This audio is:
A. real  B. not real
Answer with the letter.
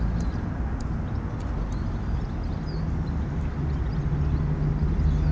A